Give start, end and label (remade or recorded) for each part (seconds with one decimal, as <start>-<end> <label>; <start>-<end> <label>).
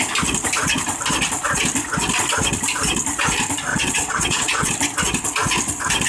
0.0-3.7 recorded; 3.7-4.7 remade; 4.7-6.1 recorded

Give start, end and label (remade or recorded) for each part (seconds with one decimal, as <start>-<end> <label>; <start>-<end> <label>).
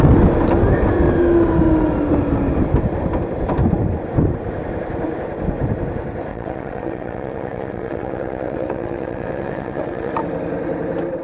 0.0-6.3 recorded; 6.3-10.1 remade; 10.1-11.2 recorded